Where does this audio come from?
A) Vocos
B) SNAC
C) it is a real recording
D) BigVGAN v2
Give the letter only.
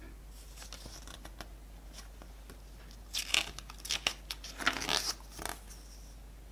C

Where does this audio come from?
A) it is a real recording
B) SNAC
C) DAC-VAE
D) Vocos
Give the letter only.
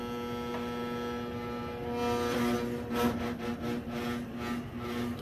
A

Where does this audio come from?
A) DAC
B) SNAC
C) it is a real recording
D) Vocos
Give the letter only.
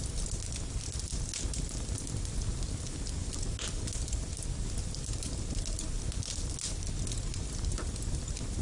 C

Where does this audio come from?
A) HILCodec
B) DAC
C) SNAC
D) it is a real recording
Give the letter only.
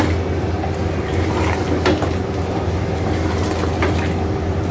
D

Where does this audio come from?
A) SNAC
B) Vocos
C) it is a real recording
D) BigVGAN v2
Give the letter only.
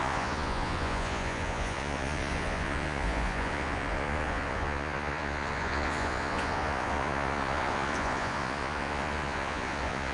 B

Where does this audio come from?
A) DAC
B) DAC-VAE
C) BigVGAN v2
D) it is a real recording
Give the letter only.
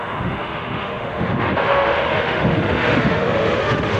B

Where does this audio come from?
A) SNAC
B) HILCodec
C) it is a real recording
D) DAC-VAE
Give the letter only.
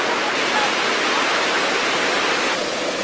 C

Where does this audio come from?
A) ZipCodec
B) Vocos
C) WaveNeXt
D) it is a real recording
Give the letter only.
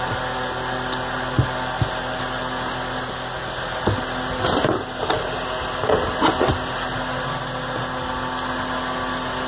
D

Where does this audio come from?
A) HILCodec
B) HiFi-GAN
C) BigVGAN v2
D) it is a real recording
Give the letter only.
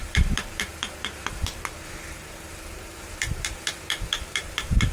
C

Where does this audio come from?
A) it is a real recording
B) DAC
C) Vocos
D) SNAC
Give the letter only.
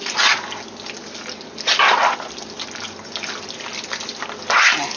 A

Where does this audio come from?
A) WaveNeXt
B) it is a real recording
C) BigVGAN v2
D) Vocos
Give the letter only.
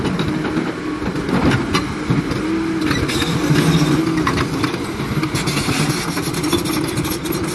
B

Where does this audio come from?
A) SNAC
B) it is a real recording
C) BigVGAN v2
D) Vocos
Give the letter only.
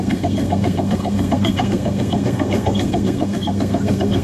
A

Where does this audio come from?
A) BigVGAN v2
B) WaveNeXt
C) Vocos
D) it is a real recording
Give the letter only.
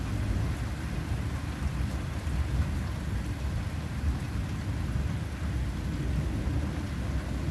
D